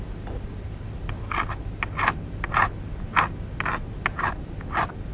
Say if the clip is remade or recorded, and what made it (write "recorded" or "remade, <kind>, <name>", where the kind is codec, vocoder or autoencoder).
recorded